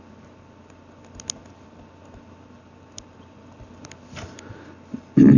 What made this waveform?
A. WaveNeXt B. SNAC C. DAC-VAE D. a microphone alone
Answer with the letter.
D